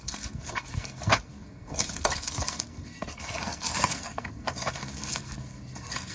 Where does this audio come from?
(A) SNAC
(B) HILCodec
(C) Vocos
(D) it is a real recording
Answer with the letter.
A